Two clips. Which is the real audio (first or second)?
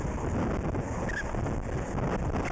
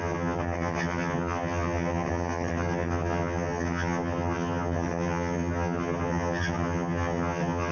first